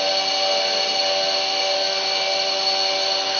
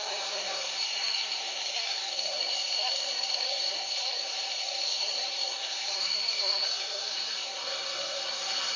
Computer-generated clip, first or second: second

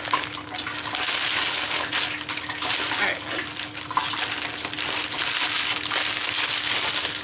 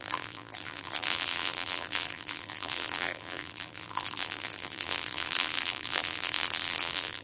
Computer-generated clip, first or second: second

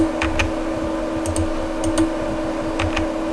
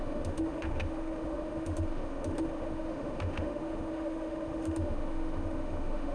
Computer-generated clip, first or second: second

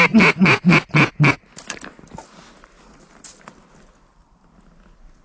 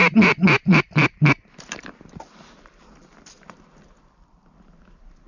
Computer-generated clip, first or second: second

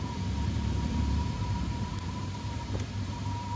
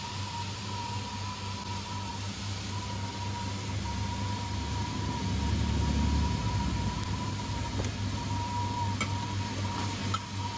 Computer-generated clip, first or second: first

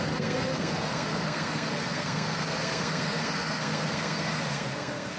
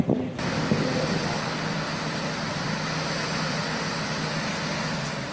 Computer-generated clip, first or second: first